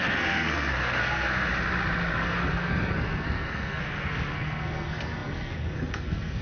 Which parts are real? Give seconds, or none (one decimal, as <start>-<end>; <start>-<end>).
1.5-2.2